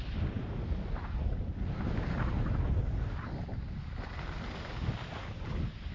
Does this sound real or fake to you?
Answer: real